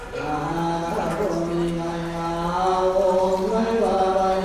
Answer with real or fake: real